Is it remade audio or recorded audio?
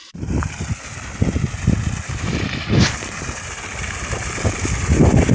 recorded